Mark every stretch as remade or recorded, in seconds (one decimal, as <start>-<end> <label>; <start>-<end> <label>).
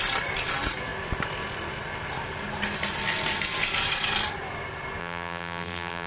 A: 0.0-5.0 recorded; 5.0-6.1 remade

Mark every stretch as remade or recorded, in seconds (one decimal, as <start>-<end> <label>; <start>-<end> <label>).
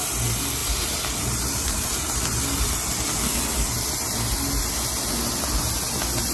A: 0.0-0.6 recorded; 0.6-2.4 remade; 2.4-6.3 recorded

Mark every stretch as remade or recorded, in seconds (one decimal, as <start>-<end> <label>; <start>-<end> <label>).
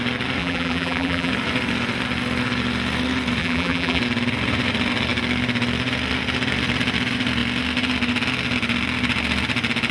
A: 0.0-0.4 recorded; 0.4-1.3 remade; 1.3-3.4 recorded; 3.4-4.0 remade; 4.0-9.9 recorded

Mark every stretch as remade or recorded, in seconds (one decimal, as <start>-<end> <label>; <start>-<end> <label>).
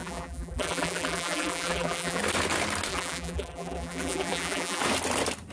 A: 0.0-2.2 remade; 2.2-2.9 recorded; 2.9-4.8 remade; 4.8-5.5 recorded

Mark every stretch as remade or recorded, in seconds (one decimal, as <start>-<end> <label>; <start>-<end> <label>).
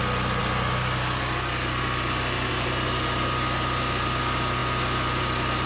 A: 0.0-5.7 recorded